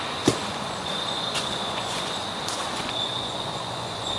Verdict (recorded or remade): remade